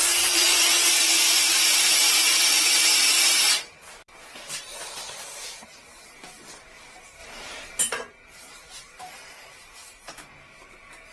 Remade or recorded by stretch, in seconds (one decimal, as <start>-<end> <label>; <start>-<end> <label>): 0.0-11.1 remade